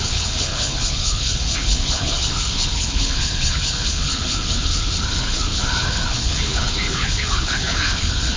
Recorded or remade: remade